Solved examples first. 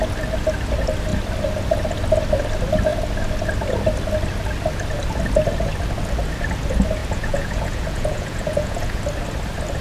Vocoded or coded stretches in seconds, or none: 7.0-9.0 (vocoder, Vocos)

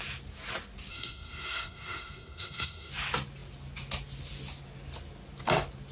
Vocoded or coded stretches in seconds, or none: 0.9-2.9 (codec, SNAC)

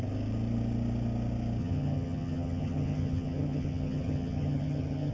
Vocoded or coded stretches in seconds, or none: 1.6-5.1 (vocoder, HiFi-GAN)

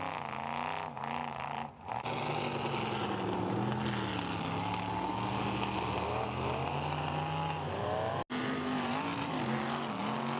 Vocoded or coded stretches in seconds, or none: 1.3-1.9 (vocoder, BigVGAN v2)